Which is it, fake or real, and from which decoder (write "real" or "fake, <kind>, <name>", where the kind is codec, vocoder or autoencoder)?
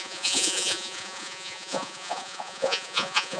fake, vocoder, Vocos